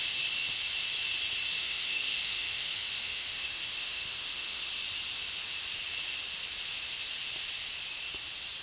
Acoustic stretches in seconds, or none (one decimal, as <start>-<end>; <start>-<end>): 0.0-1.6; 4.6-8.6